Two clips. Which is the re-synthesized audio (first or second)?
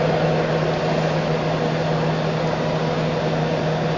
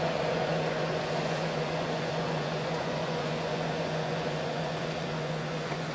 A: second